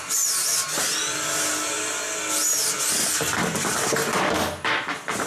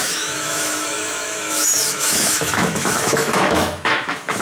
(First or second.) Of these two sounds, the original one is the first